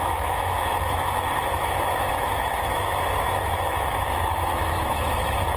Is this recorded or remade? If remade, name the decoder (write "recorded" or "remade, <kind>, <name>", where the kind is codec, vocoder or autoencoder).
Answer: remade, autoencoder, DAC-VAE